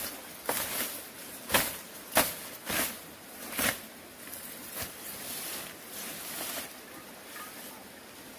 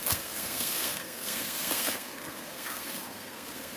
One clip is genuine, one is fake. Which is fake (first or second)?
second